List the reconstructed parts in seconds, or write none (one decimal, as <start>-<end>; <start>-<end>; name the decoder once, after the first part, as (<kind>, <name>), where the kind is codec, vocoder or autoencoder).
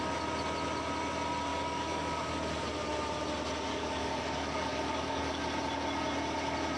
1.5-2.3 (codec, DAC); 3.7-5.4